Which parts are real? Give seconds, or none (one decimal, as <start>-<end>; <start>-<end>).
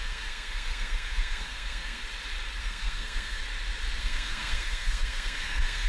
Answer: 2.0-2.6; 3.4-4.0